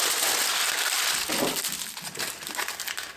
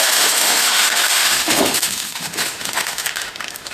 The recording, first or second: first